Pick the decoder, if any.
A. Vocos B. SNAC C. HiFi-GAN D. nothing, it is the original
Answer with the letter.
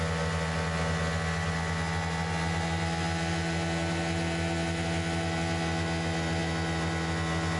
D